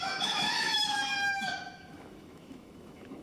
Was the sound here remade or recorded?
remade